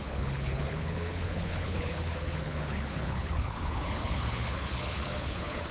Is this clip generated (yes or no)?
yes